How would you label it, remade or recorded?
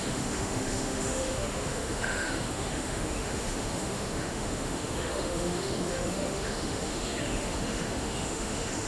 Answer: remade